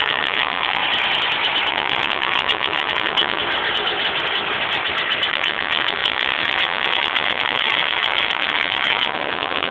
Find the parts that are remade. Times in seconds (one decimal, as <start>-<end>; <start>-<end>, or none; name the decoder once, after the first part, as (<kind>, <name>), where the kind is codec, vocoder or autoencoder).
0.0-0.8 (vocoder, WaveNeXt); 1.7-3.4; 5.3-9.7